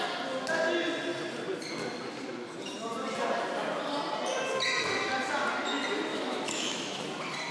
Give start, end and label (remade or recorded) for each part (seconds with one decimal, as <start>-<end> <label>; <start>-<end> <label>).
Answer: 0.0-6.1 recorded; 6.1-7.0 remade; 7.0-7.5 recorded